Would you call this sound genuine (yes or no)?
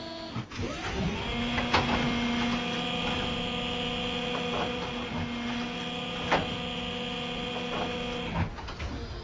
yes